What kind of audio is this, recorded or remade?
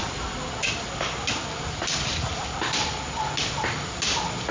recorded